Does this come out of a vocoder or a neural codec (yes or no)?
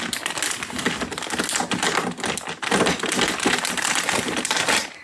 no